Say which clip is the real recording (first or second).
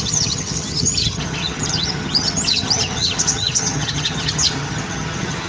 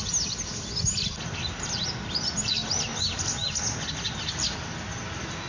second